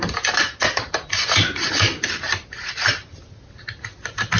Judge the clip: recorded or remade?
recorded